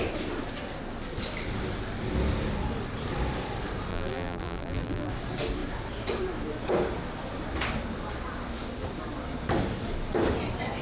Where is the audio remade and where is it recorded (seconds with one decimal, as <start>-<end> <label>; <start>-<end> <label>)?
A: 0.0-3.9 recorded; 3.9-5.1 remade; 5.1-10.8 recorded